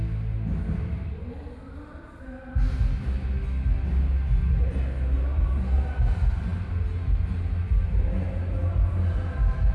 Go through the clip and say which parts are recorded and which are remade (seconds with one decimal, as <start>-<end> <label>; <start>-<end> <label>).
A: 0.0-9.7 recorded